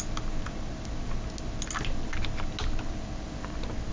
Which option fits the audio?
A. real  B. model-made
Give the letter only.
A